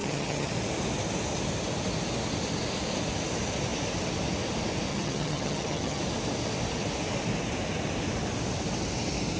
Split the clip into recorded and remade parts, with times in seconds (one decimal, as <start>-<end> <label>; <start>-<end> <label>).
0.0-0.5 remade; 0.5-4.9 recorded; 4.9-6.0 remade; 6.0-9.4 recorded